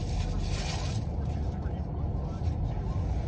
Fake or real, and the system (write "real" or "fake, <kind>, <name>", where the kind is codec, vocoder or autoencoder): real